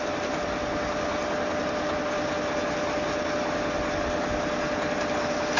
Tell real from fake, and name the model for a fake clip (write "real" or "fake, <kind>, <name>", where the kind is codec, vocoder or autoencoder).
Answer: real